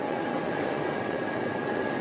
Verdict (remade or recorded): remade